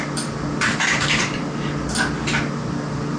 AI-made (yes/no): no